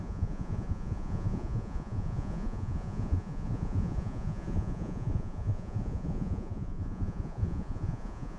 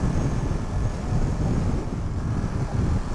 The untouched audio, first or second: second